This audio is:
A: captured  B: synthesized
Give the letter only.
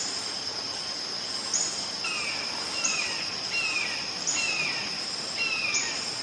A